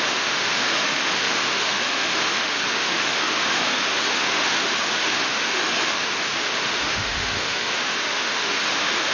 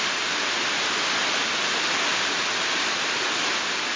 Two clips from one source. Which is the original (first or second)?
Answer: second